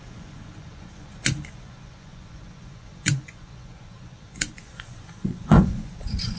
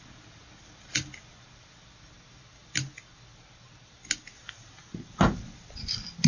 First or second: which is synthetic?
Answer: first